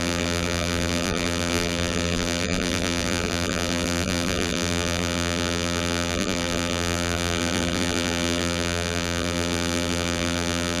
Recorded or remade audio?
remade